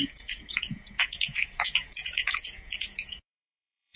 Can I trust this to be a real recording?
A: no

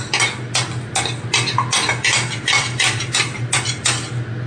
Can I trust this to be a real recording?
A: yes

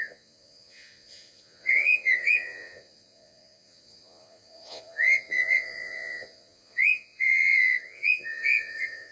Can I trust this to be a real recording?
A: no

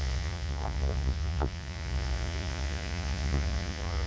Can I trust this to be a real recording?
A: no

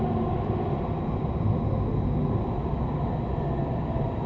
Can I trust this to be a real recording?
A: yes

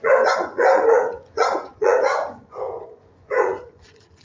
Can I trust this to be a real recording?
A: no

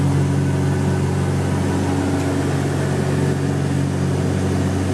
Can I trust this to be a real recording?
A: yes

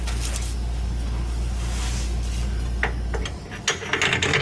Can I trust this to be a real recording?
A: yes